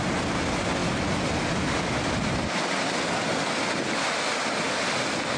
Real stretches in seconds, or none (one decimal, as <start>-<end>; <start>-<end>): 0.0-5.4